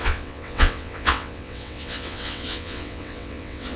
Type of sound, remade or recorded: remade